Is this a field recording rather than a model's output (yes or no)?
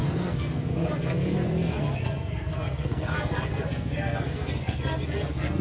no